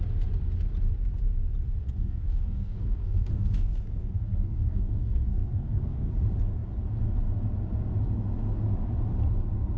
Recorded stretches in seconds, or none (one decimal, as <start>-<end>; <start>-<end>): 0.0-1.8; 6.1-9.8